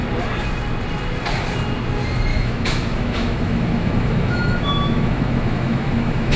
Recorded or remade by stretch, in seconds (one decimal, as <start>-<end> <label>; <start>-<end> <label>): 0.0-2.3 recorded; 2.3-6.4 remade

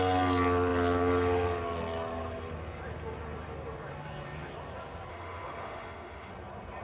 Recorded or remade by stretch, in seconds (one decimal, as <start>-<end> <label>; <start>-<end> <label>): 0.0-5.1 recorded; 5.1-6.3 remade; 6.3-6.8 recorded

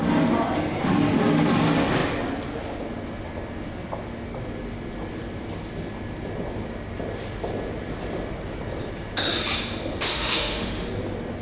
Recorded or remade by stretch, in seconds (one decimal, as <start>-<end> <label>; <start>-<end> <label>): 0.0-10.1 recorded; 10.1-10.9 remade; 10.9-11.4 recorded

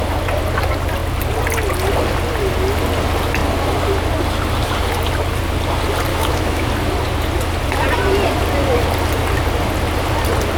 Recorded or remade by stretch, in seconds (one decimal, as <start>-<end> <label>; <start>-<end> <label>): 0.0-6.1 recorded; 6.1-6.7 remade; 6.7-10.6 recorded

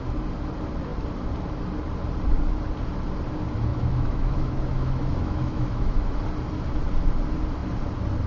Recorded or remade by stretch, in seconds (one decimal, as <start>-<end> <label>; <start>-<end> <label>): 0.0-3.7 recorded; 3.7-6.2 remade; 6.2-8.3 recorded

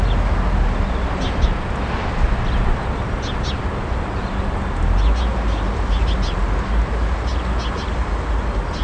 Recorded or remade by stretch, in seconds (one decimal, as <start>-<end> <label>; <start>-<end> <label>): 0.0-8.8 recorded

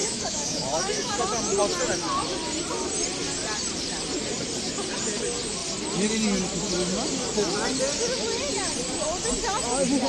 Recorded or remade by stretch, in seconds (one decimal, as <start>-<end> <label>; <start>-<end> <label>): 0.0-1.2 remade; 1.2-10.1 recorded